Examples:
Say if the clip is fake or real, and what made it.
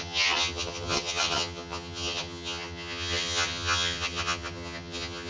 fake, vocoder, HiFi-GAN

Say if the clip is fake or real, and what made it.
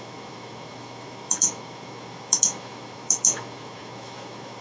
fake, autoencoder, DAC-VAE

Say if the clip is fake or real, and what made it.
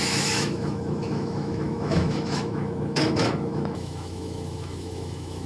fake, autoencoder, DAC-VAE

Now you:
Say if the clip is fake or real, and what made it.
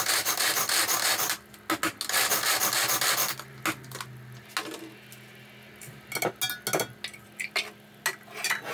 real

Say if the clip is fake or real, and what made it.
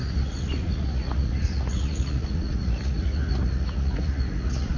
fake, vocoder, Vocos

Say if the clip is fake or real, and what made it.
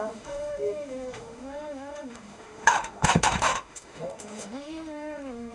fake, autoencoder, DAC-VAE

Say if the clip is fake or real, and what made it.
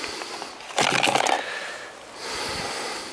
real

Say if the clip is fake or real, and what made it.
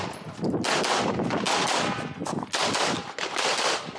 real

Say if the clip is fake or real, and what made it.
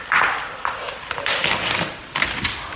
real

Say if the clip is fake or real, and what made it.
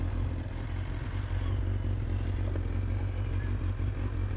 real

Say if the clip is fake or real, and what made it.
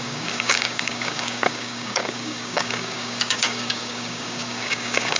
fake, codec, DAC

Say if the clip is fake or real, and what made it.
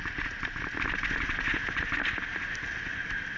real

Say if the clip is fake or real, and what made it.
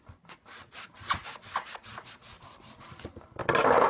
real